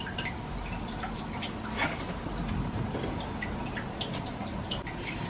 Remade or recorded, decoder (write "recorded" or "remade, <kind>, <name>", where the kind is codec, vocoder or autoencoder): recorded